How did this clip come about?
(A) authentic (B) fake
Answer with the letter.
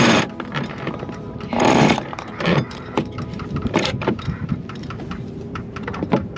B